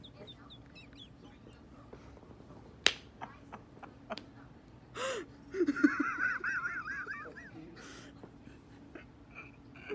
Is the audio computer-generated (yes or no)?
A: no